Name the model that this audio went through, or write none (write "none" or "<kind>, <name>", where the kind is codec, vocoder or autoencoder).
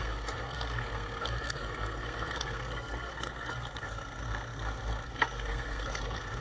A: codec, SNAC